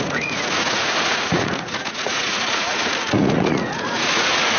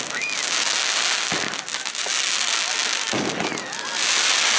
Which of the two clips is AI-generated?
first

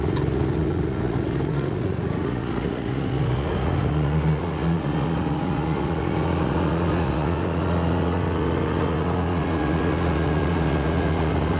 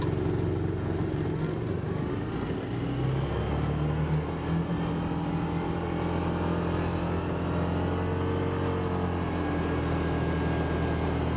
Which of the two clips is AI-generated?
first